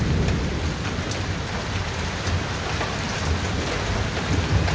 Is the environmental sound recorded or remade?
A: recorded